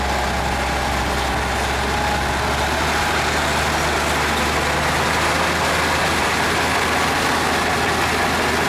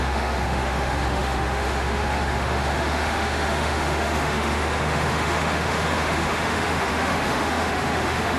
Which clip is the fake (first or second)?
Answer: second